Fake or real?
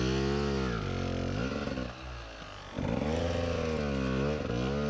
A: real